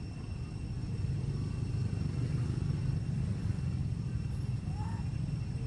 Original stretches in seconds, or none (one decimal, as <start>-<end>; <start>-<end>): 0.0-0.8; 1.3-3.8; 4.7-5.7